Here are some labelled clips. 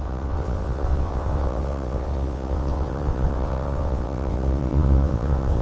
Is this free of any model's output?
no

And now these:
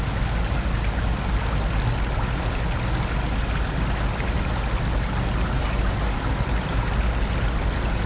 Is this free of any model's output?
yes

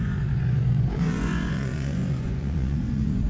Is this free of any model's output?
no